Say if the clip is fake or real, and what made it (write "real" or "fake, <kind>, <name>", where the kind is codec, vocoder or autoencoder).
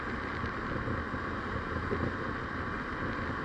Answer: real